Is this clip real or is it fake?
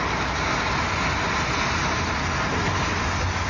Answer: real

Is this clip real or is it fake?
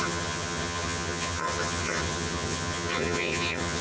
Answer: fake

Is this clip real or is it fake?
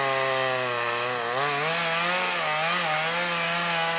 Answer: real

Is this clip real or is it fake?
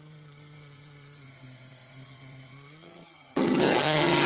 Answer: fake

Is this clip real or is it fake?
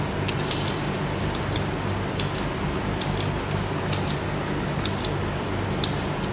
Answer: real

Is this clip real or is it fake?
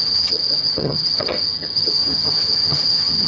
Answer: fake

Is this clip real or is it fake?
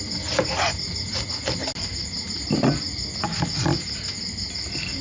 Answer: real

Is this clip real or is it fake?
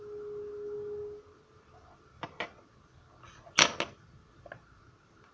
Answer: real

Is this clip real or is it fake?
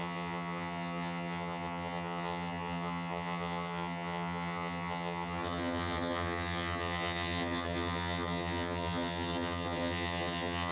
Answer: fake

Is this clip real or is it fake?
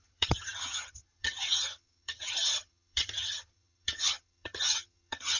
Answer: fake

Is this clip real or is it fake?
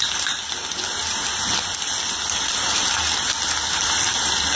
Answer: real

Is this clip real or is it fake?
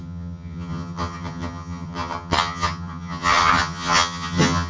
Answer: fake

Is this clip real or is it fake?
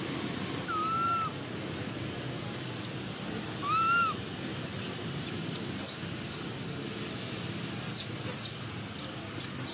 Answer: real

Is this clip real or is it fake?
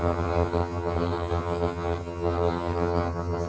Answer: fake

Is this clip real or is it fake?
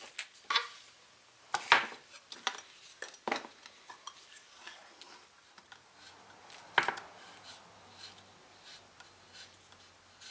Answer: real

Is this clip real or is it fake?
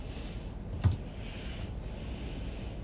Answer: real